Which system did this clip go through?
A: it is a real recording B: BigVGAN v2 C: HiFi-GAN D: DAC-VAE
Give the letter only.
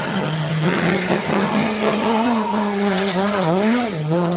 C